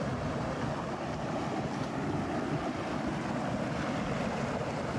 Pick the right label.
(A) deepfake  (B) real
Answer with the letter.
B